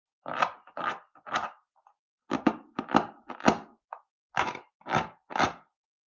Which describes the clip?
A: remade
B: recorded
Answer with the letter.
B